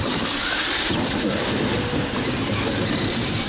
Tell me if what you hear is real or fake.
real